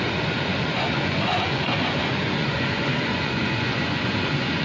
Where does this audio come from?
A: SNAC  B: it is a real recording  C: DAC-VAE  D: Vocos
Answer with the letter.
D